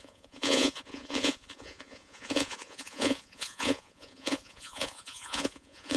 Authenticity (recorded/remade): remade